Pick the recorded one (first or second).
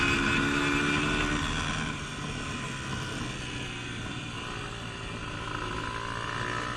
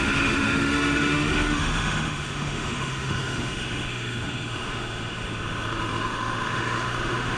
first